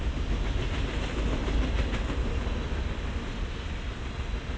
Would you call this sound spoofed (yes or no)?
no